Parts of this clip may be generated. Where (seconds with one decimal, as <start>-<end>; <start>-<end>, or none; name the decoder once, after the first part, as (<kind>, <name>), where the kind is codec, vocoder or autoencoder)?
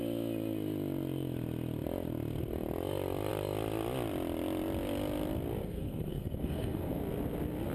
5.6-7.0 (codec, SNAC)